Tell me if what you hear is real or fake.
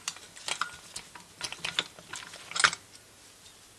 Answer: real